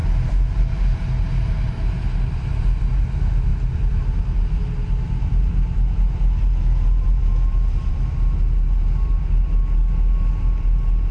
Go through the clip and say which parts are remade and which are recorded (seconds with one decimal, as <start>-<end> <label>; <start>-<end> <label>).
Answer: 0.0-11.1 recorded